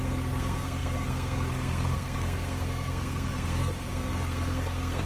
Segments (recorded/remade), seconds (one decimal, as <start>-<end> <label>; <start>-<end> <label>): 0.0-5.1 remade